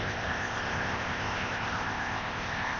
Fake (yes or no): yes